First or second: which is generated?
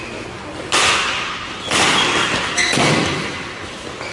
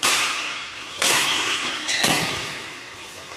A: second